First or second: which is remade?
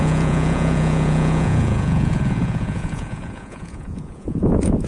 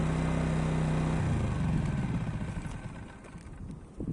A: first